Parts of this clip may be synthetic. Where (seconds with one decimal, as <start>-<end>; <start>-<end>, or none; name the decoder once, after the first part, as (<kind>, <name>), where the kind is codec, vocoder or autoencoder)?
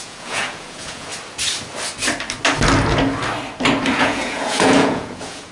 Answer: 0.0-1.1 (vocoder, Vocos); 4.0-5.5